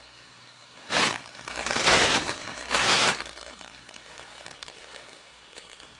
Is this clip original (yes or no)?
no